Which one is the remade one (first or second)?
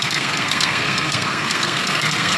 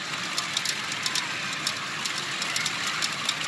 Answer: first